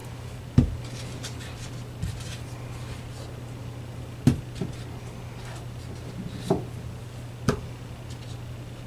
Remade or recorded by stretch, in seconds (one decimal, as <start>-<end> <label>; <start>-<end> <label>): 0.0-8.9 recorded